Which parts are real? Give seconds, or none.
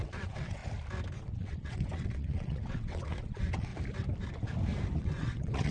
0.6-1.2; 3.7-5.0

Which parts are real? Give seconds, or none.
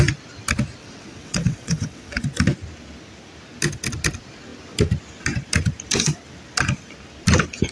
0.0-0.8; 2.2-7.7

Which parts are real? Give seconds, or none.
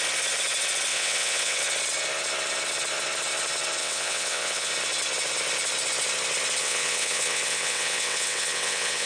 0.0-0.9; 1.6-3.8; 4.7-6.6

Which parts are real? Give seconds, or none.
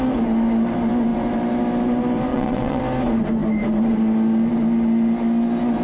0.0-2.3; 2.8-5.8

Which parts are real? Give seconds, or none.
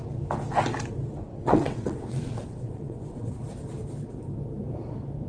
0.0-1.3; 3.3-5.3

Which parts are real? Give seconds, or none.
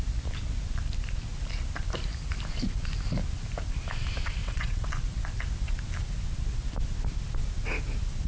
0.0-4.4; 4.9-8.3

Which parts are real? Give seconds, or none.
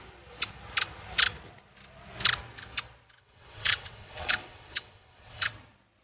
0.0-3.2; 5.5-6.0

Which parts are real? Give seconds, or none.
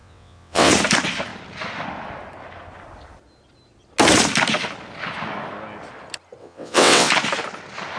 0.7-6.4; 7.1-8.0